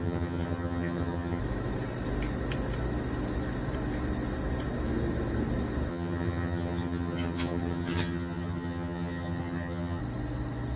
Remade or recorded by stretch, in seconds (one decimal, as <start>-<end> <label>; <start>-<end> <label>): 0.0-1.4 remade; 1.4-5.9 recorded; 5.9-10.0 remade; 10.0-10.8 recorded